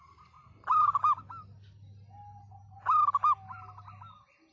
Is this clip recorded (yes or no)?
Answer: yes